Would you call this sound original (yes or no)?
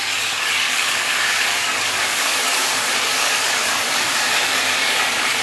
no